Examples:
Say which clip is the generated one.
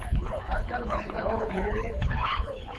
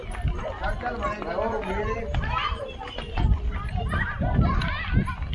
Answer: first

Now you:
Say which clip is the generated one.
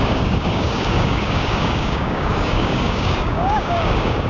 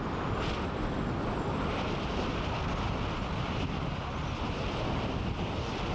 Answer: first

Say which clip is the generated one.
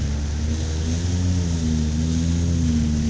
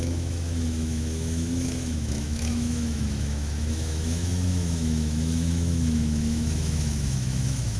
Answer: second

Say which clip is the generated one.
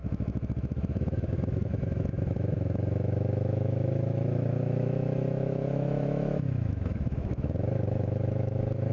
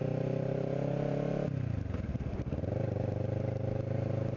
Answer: first